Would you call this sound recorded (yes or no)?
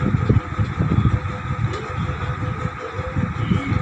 yes